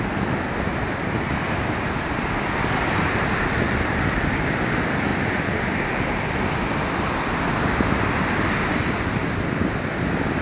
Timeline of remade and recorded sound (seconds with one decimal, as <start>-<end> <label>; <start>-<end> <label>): 0.0-10.4 recorded